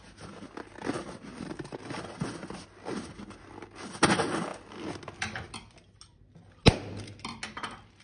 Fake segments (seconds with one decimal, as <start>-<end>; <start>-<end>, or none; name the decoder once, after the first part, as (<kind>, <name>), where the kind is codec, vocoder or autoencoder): 1.3-2.0 (vocoder, BigVGAN v2)